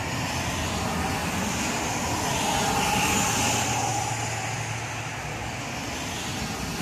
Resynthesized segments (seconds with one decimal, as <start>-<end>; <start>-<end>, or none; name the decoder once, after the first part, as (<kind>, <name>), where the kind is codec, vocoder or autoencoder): none